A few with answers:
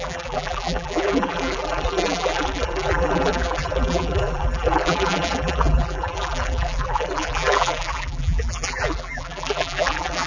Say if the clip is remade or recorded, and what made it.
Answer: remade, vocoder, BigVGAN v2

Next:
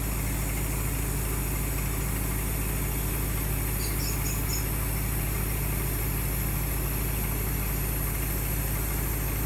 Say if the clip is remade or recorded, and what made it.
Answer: remade, vocoder, BigVGAN v2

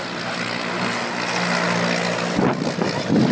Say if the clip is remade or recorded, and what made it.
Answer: recorded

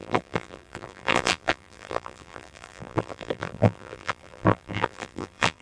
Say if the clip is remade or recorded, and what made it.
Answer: remade, vocoder, BigVGAN v2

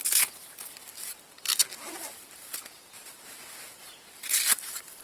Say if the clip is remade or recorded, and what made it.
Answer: remade, vocoder, BigVGAN v2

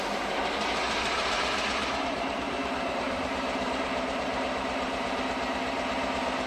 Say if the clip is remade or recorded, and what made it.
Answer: remade, vocoder, BigVGAN v2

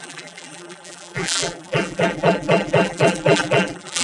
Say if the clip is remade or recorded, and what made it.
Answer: remade, vocoder, BigVGAN v2